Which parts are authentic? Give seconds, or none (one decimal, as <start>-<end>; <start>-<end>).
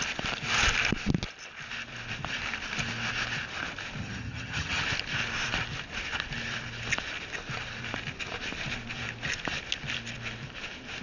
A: 0.0-4.0; 4.8-11.0